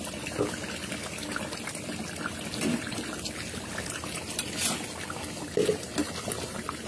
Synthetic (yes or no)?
no